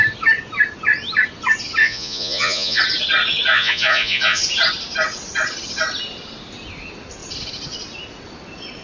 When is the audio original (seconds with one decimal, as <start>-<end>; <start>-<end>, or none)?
0.0-1.8; 2.8-3.5; 4.4-8.8